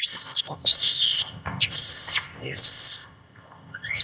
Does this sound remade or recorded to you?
remade